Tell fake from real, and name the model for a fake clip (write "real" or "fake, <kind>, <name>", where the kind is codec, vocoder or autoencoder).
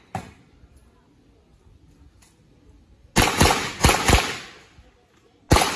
real